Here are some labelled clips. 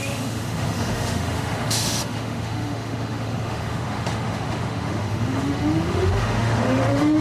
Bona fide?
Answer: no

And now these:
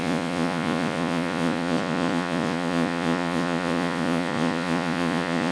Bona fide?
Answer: no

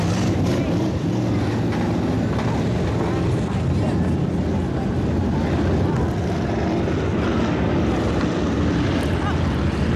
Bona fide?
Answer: yes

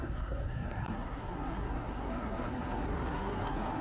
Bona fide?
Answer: no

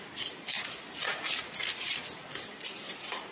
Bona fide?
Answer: yes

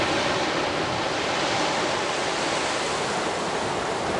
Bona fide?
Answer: yes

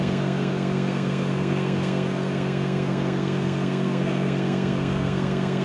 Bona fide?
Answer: no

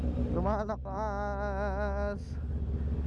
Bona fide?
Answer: yes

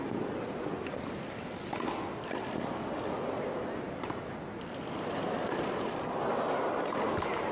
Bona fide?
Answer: yes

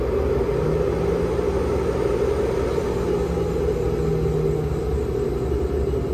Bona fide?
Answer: yes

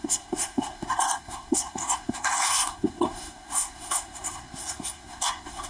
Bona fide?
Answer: no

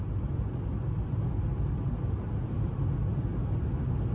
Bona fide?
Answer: yes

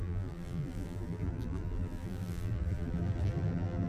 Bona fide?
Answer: no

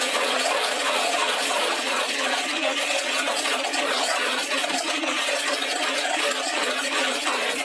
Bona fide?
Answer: no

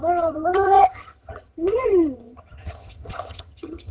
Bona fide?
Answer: no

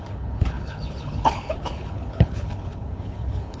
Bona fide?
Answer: no